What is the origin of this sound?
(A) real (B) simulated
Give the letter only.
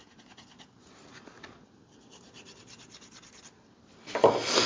A